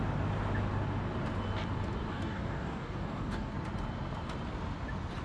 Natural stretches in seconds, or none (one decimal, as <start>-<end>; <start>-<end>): 0.0-2.1; 3.5-5.2